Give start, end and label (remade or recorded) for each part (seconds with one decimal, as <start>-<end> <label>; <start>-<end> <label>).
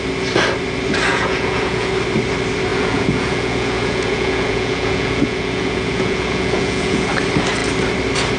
0.0-1.1 recorded; 1.1-1.9 remade; 1.9-2.7 recorded; 2.7-7.1 remade; 7.1-8.4 recorded